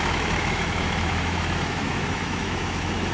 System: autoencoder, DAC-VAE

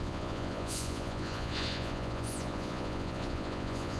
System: vocoder, Vocos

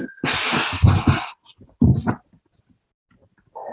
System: none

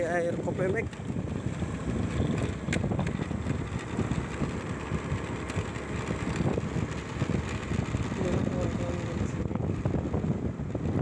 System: none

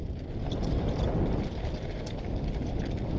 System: none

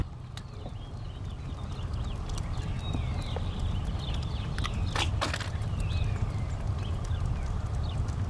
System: none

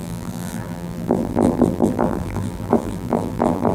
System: vocoder, BigVGAN v2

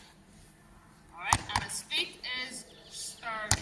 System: none